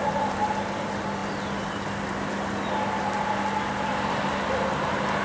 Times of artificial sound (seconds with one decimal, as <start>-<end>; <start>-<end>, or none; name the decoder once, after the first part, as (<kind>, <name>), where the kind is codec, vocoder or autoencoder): none